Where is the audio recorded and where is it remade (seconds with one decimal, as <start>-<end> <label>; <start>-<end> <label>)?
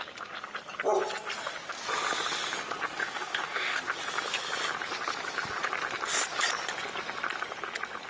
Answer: 0.0-3.0 recorded; 3.0-3.8 remade; 3.8-8.1 recorded